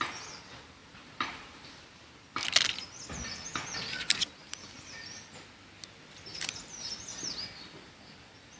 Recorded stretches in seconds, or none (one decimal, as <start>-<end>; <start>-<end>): 0.0-0.8; 2.0-6.3; 6.9-8.6